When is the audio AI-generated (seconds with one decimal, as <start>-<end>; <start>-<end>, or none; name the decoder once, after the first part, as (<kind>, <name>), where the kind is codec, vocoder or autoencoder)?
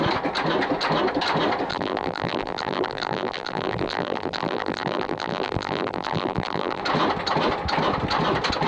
1.7-6.8 (vocoder, BigVGAN v2)